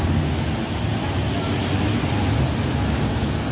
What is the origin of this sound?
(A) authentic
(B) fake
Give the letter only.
A